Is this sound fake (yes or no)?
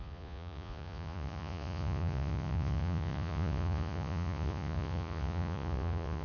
yes